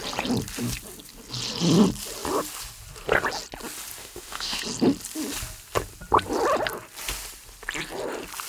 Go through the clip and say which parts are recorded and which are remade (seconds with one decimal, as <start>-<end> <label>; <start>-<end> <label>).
0.0-4.0 recorded; 4.0-4.6 remade; 4.6-8.5 recorded